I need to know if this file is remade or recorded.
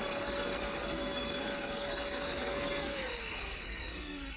remade